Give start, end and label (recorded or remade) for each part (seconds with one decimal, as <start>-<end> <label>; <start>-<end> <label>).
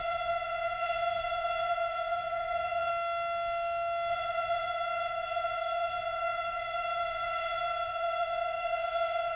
0.0-2.9 remade; 2.9-4.1 recorded; 4.1-9.4 remade